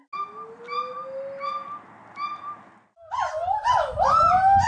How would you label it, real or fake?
real